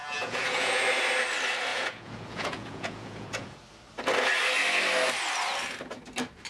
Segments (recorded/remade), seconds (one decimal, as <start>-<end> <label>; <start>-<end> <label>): 0.0-0.8 remade; 0.8-1.7 recorded; 1.7-3.6 remade; 3.6-6.5 recorded